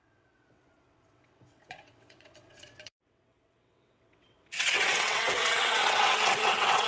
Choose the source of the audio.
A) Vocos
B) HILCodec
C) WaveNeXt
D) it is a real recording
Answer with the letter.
C